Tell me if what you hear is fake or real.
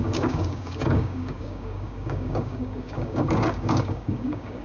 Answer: fake